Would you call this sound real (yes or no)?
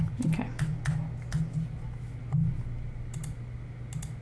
yes